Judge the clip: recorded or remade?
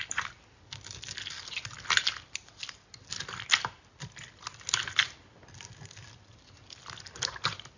recorded